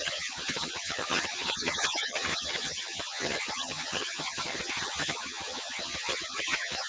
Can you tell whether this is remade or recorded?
remade